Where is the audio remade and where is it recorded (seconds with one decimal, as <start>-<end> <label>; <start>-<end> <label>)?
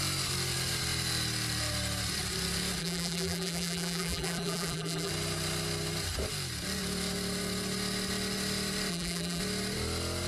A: 0.0-2.8 recorded; 2.8-5.1 remade; 5.1-8.9 recorded; 8.9-9.4 remade; 9.4-10.3 recorded